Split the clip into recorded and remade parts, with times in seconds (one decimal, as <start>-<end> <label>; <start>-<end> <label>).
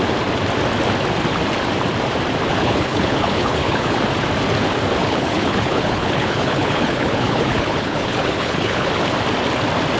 0.0-2.6 recorded; 2.6-4.0 remade; 4.0-5.0 recorded; 5.0-8.9 remade; 8.9-10.0 recorded